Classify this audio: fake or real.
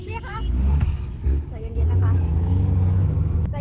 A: fake